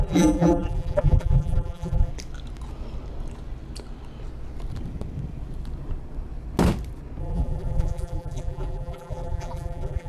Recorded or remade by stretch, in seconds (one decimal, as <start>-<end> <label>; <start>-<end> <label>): 0.0-2.1 remade; 2.1-7.2 recorded; 7.2-10.1 remade